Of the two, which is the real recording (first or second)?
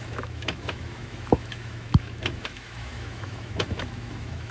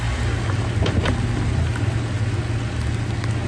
second